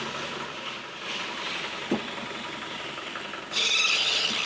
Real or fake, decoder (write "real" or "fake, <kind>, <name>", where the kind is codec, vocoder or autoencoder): real